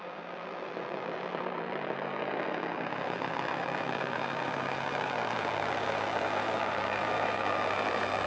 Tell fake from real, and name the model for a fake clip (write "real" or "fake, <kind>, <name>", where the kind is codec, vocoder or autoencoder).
fake, vocoder, BigVGAN v2